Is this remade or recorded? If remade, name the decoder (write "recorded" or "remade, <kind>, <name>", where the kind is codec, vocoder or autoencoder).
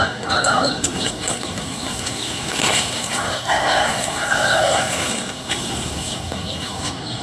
remade, codec, SNAC